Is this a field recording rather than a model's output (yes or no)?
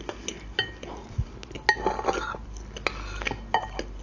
yes